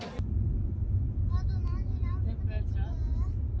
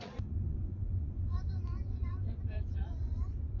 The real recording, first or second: first